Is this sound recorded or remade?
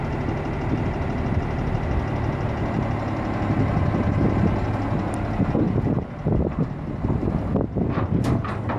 recorded